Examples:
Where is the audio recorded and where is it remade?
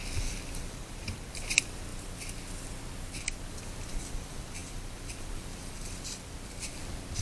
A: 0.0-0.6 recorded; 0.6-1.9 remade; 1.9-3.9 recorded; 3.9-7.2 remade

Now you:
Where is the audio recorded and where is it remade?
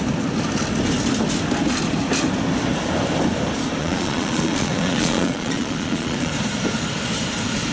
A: 0.0-3.8 recorded; 3.8-6.3 remade; 6.3-7.7 recorded